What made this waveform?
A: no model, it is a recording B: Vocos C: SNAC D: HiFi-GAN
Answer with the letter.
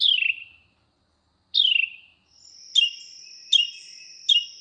A